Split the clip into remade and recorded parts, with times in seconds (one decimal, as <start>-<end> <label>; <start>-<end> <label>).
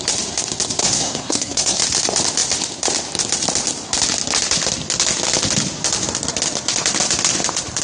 0.0-0.8 recorded; 0.8-1.8 remade; 1.8-7.8 recorded